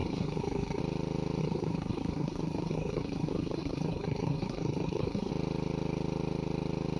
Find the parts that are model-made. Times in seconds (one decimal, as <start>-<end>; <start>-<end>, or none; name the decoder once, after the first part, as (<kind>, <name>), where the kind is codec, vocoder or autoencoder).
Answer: 0.0-0.8 (codec, SNAC); 1.4-5.3